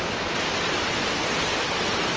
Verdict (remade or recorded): recorded